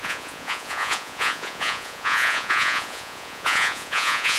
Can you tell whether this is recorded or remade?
remade